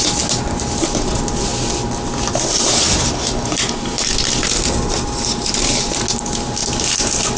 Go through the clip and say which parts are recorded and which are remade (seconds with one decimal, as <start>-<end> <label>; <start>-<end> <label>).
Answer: 0.0-7.4 recorded